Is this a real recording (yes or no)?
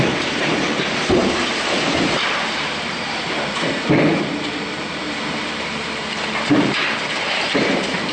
no